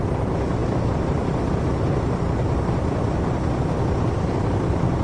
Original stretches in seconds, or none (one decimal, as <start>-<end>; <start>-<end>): none

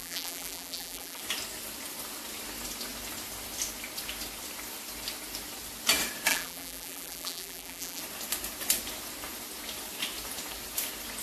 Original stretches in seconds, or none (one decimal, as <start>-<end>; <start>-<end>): 1.2-6.3; 8.0-11.2

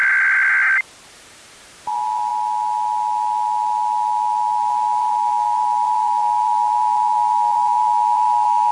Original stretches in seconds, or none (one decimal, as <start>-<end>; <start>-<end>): 0.0-1.1; 2.3-4.6

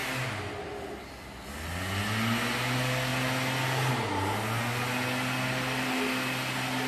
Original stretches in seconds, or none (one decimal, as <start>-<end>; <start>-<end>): 0.0-6.9

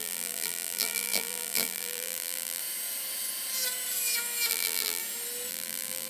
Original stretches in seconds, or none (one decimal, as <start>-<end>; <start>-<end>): 2.6-4.5; 5.0-5.5

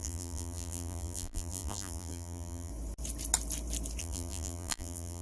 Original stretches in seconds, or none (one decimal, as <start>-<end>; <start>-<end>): 2.7-4.0

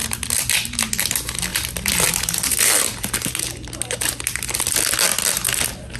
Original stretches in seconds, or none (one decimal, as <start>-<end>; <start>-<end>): 0.0-6.0

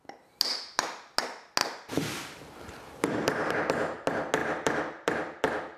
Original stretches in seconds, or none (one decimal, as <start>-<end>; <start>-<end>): 0.0-1.6; 3.5-4.4